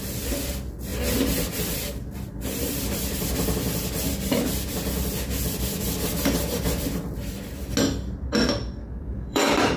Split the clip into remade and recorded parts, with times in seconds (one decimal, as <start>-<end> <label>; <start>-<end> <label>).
0.0-8.8 recorded; 8.8-9.8 remade